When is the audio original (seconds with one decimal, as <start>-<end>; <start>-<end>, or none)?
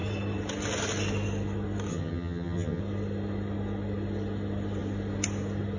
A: 0.0-1.9; 2.8-5.8